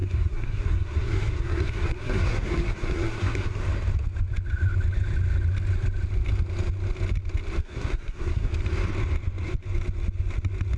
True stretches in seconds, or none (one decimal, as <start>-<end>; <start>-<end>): 3.6-7.6; 8.5-10.8